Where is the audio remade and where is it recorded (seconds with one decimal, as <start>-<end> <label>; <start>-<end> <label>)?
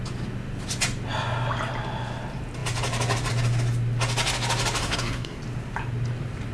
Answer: 0.0-4.8 recorded; 4.8-5.4 remade; 5.4-6.5 recorded